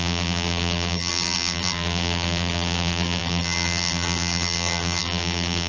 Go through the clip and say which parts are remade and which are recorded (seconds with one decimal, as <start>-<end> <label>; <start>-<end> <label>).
0.0-5.7 remade